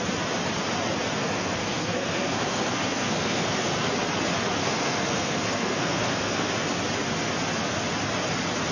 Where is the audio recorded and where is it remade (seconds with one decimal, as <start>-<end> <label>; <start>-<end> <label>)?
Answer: 0.0-1.2 recorded; 1.2-3.9 remade; 3.9-4.6 recorded; 4.6-6.5 remade; 6.5-8.7 recorded

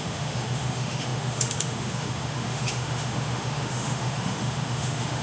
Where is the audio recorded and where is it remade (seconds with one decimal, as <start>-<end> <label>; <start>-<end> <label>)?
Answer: 0.0-5.2 remade

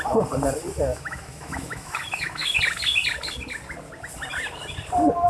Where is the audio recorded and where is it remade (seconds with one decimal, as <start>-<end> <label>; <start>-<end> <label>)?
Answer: 0.0-0.9 recorded; 0.9-2.6 remade; 2.6-5.3 recorded